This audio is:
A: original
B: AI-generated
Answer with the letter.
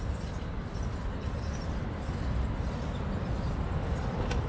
A